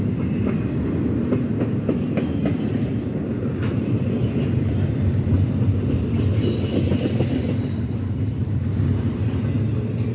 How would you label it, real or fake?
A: real